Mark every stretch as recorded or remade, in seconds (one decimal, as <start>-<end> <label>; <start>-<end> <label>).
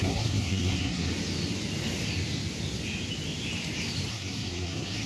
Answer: 0.0-1.1 remade; 1.1-4.1 recorded; 4.1-5.1 remade